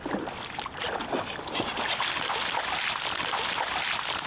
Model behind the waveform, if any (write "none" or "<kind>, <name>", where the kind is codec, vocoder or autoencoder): none